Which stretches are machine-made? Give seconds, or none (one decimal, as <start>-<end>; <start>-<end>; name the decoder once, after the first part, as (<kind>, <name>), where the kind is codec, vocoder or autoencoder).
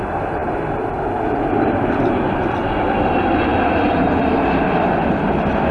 none